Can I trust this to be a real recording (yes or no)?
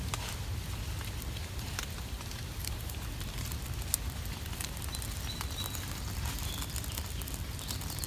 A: yes